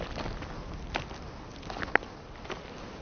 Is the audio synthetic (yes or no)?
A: no